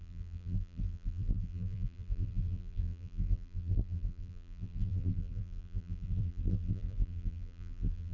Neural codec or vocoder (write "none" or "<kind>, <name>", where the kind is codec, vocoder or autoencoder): vocoder, BigVGAN v2